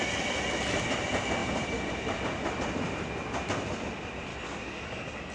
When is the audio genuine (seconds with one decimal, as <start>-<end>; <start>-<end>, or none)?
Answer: 0.0-4.3